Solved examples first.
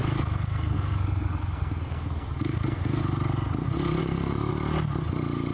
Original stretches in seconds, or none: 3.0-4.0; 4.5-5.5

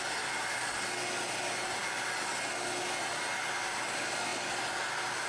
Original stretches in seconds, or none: 0.0-5.3

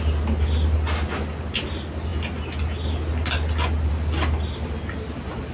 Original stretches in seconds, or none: 0.0-5.5

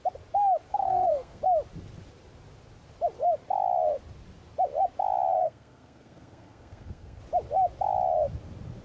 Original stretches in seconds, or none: 0.0-0.7; 1.4-5.4; 7.2-8.8

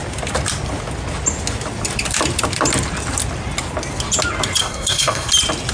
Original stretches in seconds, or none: 0.0-4.6; 5.3-5.7

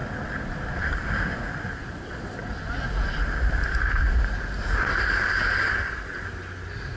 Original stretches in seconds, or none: 0.0-7.0

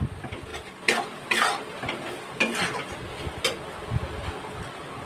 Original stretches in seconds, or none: 0.0-5.1